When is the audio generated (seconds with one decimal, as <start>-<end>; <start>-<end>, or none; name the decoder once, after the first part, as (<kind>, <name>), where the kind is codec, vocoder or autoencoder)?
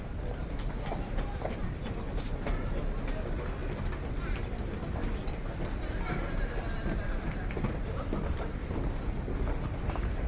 none